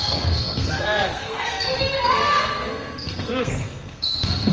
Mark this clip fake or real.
fake